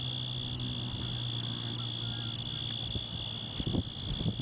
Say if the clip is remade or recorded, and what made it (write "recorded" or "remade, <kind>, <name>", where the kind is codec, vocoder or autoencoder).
recorded